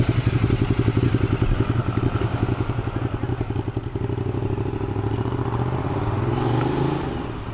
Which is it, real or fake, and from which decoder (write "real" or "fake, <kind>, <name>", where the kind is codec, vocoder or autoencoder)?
real